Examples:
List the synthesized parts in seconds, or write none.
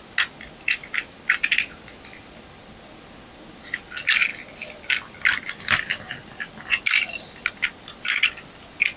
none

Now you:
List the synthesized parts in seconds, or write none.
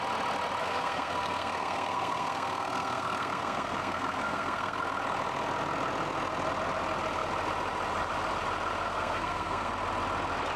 0.6-4.8 (codec, SNAC); 8.9-9.7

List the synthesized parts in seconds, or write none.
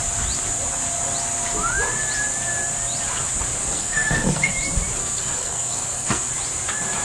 3.6-4.5 (codec, SNAC); 5.0-6.3